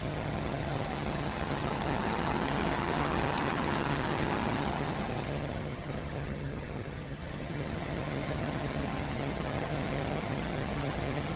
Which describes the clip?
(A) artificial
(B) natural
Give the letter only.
A